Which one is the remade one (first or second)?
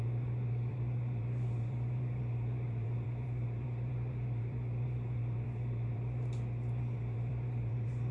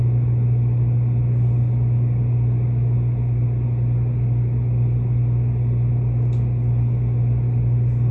first